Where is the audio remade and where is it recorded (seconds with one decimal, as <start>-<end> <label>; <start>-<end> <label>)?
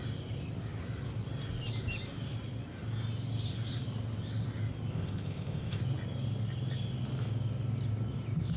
0.0-4.9 recorded; 4.9-5.8 remade; 5.8-8.6 recorded